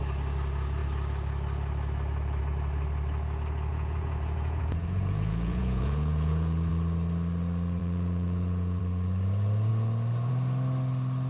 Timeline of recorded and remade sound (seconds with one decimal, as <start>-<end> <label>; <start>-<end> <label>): 0.0-3.7 recorded; 3.7-6.7 remade; 6.7-7.8 recorded; 7.8-8.8 remade; 8.8-11.3 recorded